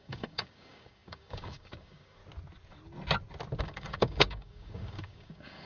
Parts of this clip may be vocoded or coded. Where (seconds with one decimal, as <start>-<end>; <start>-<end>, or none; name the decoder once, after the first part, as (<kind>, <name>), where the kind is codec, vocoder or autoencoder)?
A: 0.0-2.2 (codec, DAC); 3.6-5.7